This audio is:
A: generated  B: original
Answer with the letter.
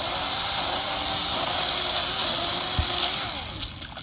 B